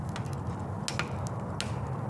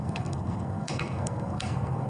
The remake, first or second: second